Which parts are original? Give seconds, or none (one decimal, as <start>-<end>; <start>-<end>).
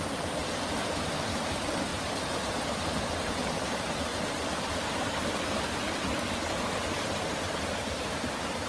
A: 0.4-1.1; 1.9-3.0; 4.1-7.2